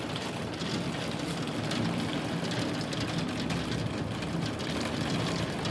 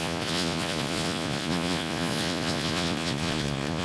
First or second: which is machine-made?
second